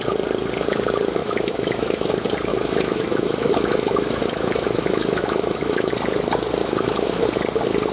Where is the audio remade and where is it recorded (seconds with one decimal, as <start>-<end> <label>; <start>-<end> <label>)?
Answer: 0.0-1.2 recorded; 1.2-2.1 remade; 2.1-2.5 recorded; 2.5-5.9 remade; 5.9-6.6 recorded; 6.6-7.3 remade; 7.3-7.9 recorded